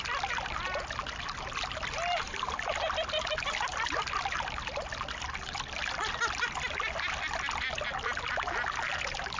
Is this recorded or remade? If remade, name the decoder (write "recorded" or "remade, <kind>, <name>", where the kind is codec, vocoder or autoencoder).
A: recorded